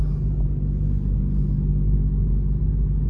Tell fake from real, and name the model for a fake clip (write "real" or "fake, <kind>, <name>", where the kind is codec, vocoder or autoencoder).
real